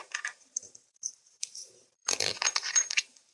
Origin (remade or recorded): remade